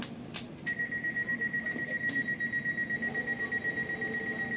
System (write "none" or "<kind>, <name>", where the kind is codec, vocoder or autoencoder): none